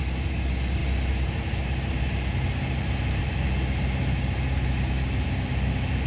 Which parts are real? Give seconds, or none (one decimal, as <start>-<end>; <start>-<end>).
0.0-6.1